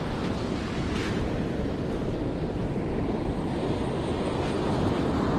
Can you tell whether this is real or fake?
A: real